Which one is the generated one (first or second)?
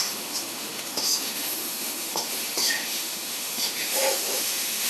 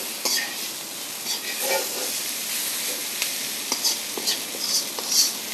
first